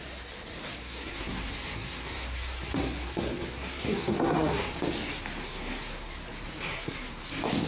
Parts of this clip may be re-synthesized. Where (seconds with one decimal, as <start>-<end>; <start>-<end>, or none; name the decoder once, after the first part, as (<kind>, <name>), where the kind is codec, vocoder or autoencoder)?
0.8-4.7 (codec, SNAC); 5.4-6.2; 6.7-7.2